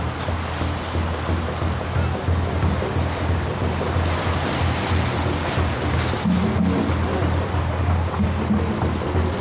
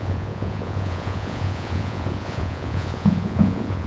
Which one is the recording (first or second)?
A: first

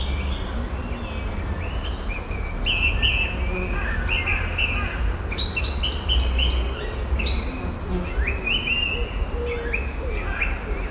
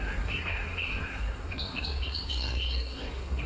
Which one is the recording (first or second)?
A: first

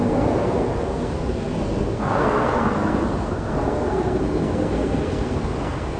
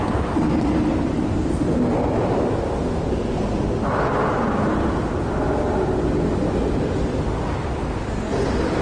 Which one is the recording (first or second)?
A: second